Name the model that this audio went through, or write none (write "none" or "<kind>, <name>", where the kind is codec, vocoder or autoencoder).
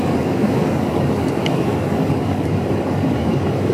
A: codec, DAC